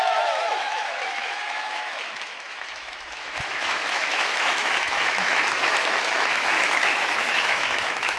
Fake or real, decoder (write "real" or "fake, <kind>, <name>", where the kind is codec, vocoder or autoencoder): fake, autoencoder, DAC-VAE